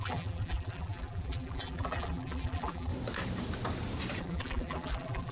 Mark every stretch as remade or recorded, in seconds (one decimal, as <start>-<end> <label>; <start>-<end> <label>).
0.0-2.9 remade; 2.9-4.2 recorded; 4.2-5.3 remade